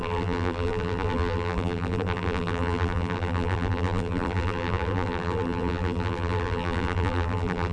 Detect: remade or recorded remade